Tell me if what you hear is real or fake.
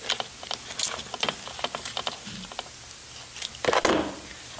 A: real